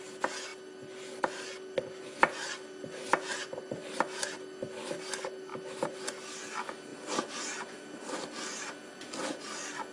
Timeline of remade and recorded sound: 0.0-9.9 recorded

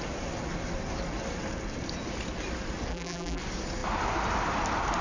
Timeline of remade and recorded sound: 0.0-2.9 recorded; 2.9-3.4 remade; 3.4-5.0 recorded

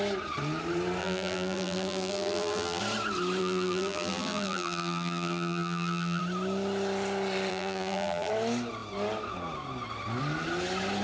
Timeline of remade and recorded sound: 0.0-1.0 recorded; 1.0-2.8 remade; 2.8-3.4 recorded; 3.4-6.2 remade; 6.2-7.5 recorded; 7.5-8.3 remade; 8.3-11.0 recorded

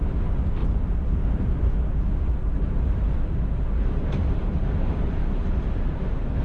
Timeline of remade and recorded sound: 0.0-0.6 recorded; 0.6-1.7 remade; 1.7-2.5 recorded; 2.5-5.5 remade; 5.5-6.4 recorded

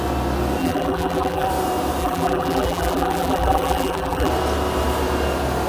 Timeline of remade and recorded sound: 0.0-0.6 recorded; 0.6-1.5 remade; 1.5-2.0 recorded; 2.0-4.3 remade; 4.3-5.7 recorded

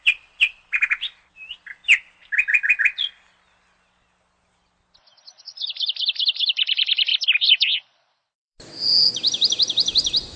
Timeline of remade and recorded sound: 0.0-1.8 remade; 1.8-5.4 recorded; 5.4-10.4 remade

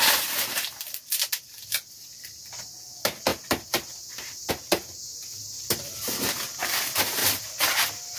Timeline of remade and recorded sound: 0.0-7.2 remade; 7.2-8.2 recorded

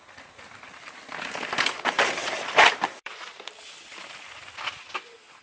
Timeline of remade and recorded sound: 0.0-2.2 recorded; 2.2-5.0 remade; 5.0-5.4 recorded